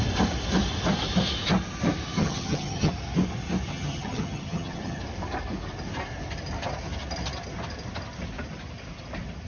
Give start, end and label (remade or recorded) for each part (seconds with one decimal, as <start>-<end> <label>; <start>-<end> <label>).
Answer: 0.0-2.2 recorded; 2.2-2.9 remade; 2.9-3.7 recorded; 3.7-5.0 remade; 5.0-9.5 recorded